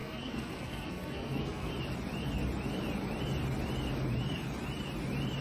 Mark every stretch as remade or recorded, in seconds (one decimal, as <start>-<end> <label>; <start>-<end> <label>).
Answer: 0.0-1.7 remade; 1.7-5.4 recorded